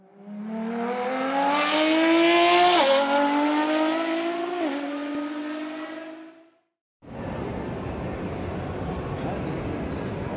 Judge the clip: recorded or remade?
recorded